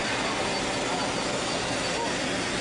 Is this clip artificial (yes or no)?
no